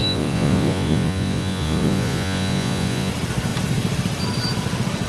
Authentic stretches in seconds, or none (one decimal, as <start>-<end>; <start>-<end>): 3.1-5.1